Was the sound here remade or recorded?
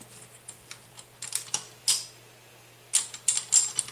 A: recorded